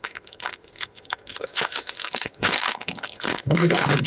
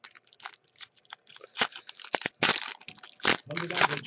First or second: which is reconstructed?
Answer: first